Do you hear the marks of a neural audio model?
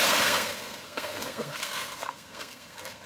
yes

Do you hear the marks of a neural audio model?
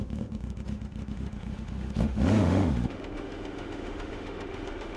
yes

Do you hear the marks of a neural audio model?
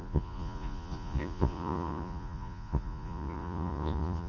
yes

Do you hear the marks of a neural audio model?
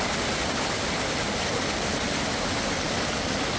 no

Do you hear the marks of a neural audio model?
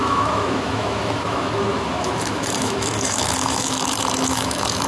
yes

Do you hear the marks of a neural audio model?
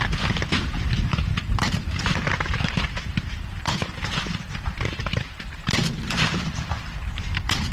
yes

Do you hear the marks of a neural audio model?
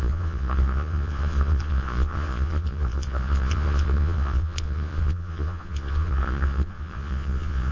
yes